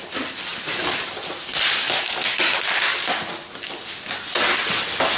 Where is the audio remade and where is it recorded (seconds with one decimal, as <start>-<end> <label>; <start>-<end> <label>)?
0.0-5.2 recorded